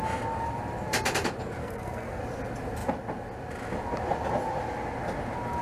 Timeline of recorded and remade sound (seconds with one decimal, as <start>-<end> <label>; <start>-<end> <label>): 0.0-1.6 recorded; 1.6-2.2 remade; 2.2-5.6 recorded